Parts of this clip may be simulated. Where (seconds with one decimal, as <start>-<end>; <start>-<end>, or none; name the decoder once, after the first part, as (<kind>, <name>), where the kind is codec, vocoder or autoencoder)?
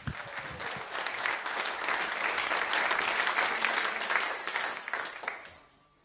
4.4-5.1 (codec, DAC)